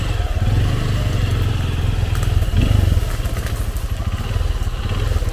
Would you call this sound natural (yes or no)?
yes